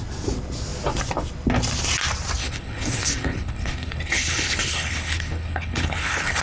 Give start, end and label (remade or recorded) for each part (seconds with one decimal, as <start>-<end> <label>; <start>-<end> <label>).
0.0-2.4 recorded; 2.4-6.4 remade